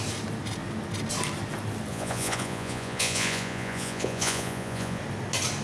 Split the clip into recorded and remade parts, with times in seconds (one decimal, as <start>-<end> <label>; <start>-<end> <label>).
0.0-1.9 recorded; 1.9-5.0 remade; 5.0-5.6 recorded